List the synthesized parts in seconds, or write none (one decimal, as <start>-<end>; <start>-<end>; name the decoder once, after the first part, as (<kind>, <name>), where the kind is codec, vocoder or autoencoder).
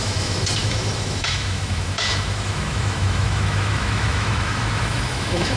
0.0-5.6 (autoencoder, DAC-VAE)